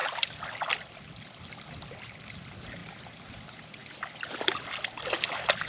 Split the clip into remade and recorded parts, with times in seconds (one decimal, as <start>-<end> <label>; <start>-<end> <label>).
0.0-1.5 recorded; 1.5-2.8 remade; 2.8-3.3 recorded; 3.3-3.8 remade; 3.8-4.5 recorded; 4.5-5.7 remade